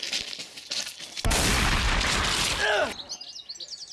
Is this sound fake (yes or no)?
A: no